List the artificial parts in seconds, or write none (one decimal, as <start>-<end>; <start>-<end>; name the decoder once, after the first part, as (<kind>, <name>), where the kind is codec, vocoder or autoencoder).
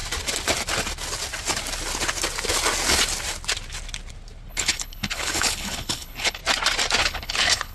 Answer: 4.5-6.4 (codec, HILCodec); 7.0-7.7